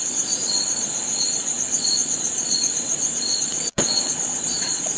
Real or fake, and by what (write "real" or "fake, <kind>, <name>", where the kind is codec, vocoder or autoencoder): fake, vocoder, Vocos